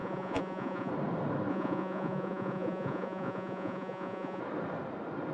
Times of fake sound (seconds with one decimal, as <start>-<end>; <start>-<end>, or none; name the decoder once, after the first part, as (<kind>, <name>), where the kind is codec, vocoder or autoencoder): 0.0-0.9 (vocoder, Vocos); 1.5-4.4